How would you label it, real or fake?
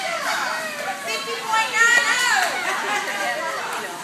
real